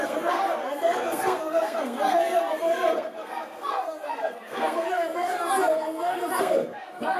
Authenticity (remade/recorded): remade